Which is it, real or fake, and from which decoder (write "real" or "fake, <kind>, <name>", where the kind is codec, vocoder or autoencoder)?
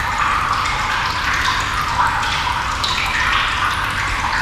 fake, vocoder, BigVGAN v2